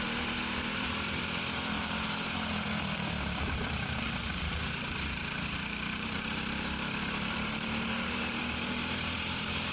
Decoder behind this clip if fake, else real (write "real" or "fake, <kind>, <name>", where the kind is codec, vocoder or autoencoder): fake, vocoder, BigVGAN v2